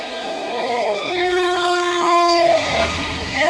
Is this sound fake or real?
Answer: fake